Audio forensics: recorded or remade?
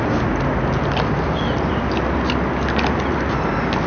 recorded